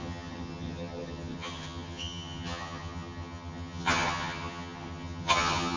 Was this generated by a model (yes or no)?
yes